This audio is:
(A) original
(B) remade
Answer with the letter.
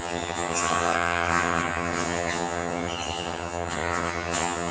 B